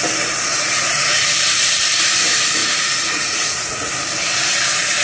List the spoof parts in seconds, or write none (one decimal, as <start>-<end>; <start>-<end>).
0.5-1.2; 2.6-3.9